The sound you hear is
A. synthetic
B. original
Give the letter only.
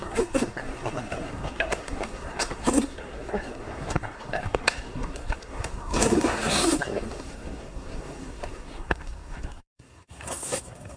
A